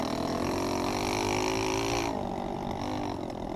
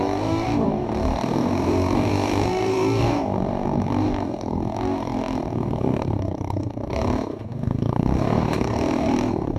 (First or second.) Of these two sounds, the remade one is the second